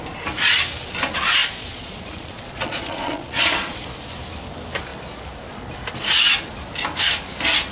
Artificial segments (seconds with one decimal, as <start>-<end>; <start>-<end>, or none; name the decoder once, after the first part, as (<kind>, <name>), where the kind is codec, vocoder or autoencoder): 1.4-3.8 (vocoder, Vocos)